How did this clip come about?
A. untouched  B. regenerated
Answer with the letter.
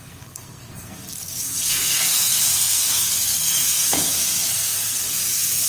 B